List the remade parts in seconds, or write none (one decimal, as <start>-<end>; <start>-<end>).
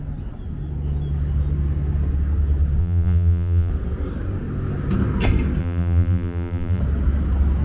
2.8-3.7; 5.6-6.8